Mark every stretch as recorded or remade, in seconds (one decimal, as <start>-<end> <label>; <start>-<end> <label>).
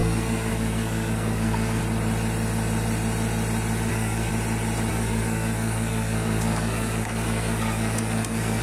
0.0-1.8 remade; 1.8-3.9 recorded; 3.9-4.3 remade; 4.3-4.9 recorded; 4.9-8.6 remade